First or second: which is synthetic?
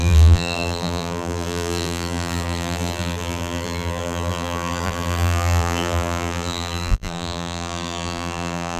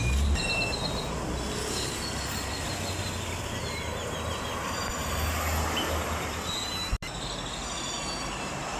first